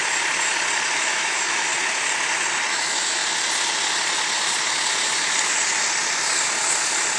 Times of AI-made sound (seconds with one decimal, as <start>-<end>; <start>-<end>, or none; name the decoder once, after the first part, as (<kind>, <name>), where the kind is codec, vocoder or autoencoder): 1.0-1.7 (autoencoder, DAC-VAE); 2.7-3.2